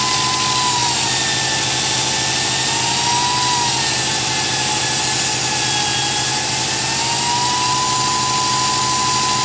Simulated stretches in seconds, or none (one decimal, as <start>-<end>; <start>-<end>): none